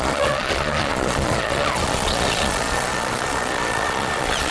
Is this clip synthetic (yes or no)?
yes